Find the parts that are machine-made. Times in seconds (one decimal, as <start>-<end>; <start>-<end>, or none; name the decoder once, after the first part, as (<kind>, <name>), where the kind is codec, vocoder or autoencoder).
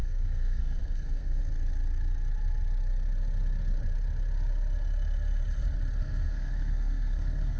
0.0-1.4 (codec, SNAC); 6.0-7.6